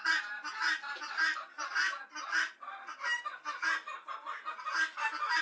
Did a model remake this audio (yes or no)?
no